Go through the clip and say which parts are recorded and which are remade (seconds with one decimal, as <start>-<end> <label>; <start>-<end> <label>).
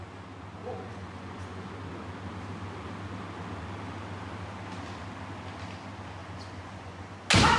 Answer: 0.0-0.6 recorded; 0.6-1.7 remade; 1.7-6.2 recorded; 6.2-7.1 remade; 7.1-7.6 recorded